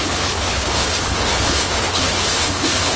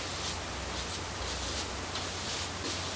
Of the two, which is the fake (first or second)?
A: first